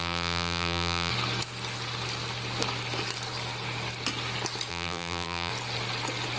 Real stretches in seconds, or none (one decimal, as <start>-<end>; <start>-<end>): 1.1-4.7; 5.5-6.4